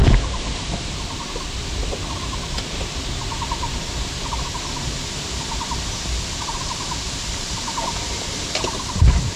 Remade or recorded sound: recorded